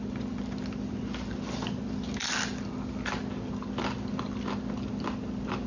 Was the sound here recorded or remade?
recorded